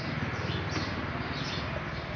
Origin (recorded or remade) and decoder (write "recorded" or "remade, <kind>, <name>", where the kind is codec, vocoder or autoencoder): recorded